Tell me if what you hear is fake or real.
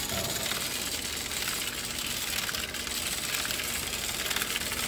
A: real